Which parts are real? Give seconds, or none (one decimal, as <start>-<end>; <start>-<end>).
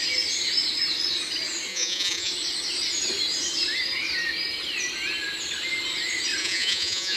0.0-1.7; 2.3-6.4